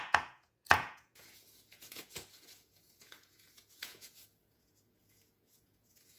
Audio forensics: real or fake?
fake